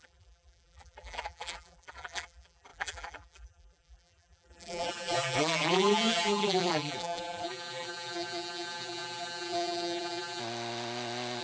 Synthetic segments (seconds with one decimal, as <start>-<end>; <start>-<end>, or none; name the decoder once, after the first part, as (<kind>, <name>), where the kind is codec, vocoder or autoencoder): 0.0-10.4 (vocoder, BigVGAN v2)

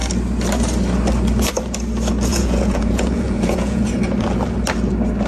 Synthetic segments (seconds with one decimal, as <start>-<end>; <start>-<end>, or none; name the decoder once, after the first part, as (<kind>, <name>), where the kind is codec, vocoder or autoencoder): 2.3-3.8 (vocoder, Vocos)

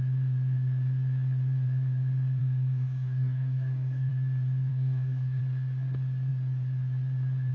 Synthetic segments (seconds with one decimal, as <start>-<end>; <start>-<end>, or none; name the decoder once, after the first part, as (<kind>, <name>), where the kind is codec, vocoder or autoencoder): 2.4-4.1 (codec, DAC); 4.7-5.4

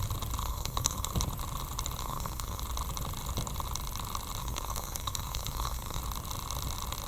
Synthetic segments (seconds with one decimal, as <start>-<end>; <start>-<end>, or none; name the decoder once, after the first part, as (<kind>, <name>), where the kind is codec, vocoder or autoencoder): 0.4-1.1 (codec, SNAC); 2.0-2.6; 4.4-6.0

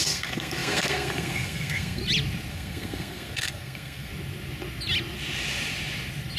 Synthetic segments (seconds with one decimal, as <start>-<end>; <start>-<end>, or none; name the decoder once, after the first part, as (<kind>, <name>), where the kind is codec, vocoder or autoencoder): 0.0-2.0 (codec, SNAC); 2.5-4.1

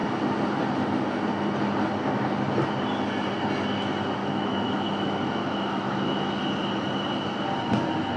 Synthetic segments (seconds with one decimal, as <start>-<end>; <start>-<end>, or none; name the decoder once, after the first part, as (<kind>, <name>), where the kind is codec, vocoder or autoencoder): 4.2-6.3 (autoencoder, DAC-VAE)